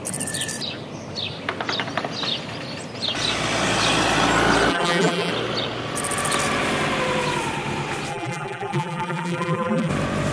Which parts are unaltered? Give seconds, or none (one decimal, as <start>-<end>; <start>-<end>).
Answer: 0.0-4.7; 5.3-8.1; 9.9-10.3